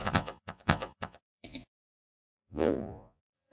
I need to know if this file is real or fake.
fake